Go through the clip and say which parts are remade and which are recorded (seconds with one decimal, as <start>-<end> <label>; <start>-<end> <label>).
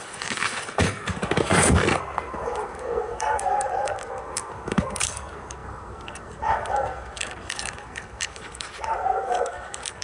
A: 0.0-10.0 remade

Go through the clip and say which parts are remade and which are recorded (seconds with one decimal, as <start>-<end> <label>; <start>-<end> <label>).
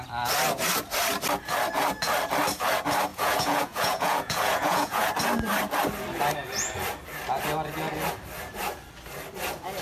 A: 0.0-3.1 recorded; 3.1-5.1 remade; 5.1-9.8 recorded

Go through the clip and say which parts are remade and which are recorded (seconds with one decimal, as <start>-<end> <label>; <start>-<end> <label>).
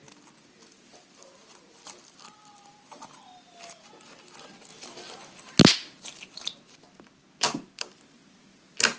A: 0.0-9.0 recorded